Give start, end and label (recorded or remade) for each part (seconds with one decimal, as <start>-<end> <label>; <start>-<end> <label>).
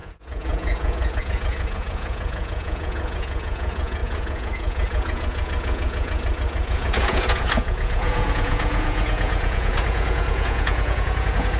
0.0-11.6 remade